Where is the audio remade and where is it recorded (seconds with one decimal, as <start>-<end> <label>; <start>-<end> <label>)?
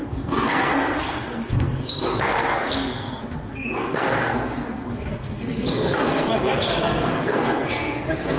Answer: 0.0-8.4 remade